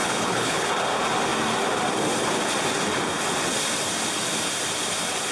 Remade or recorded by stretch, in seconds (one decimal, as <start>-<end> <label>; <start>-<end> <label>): 0.0-0.7 remade; 0.7-5.3 recorded